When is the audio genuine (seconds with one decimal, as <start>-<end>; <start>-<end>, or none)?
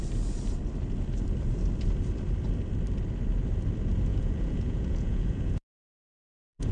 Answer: 0.0-4.1